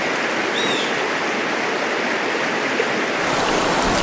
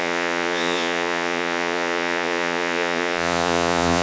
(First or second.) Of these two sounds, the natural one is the first